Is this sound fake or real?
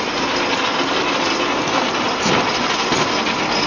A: real